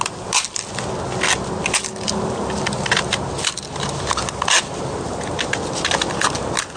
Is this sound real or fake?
real